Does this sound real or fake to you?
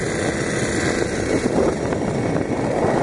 real